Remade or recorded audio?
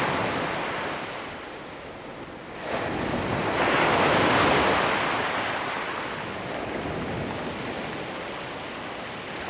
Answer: recorded